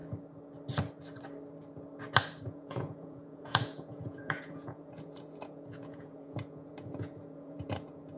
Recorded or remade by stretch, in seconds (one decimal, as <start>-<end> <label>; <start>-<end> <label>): 0.0-2.4 recorded; 2.4-8.2 remade